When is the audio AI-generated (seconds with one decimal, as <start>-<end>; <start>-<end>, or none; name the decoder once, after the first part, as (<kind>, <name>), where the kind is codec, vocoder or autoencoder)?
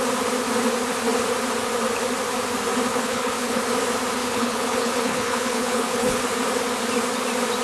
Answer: 2.9-3.6 (codec, HILCodec); 4.2-6.2